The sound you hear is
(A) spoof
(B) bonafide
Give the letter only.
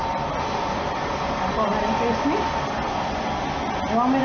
B